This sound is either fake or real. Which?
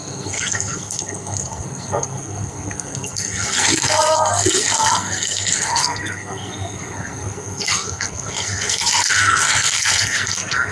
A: fake